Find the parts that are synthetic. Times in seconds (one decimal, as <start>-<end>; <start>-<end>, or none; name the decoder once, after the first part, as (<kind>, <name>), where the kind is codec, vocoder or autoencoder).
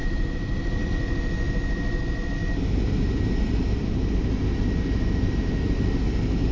0.0-0.9 (vocoder, BigVGAN v2); 2.4-6.5